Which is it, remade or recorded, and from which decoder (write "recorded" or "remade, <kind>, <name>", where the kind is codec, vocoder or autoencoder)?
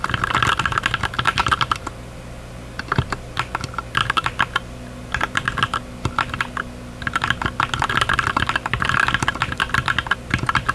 recorded